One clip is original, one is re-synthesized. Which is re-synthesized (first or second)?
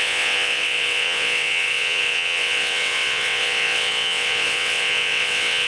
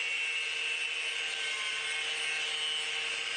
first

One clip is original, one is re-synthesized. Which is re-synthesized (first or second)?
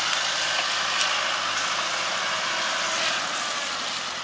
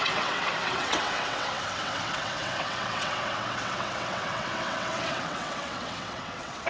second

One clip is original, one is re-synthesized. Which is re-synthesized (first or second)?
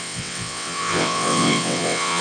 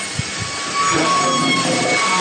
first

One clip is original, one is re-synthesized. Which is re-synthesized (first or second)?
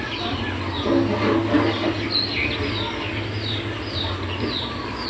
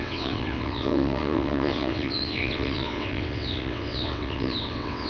second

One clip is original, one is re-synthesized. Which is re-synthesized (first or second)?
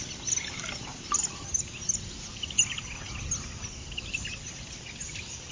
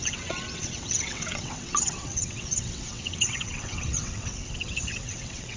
second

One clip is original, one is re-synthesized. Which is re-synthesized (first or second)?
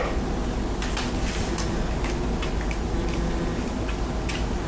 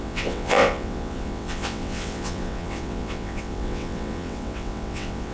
second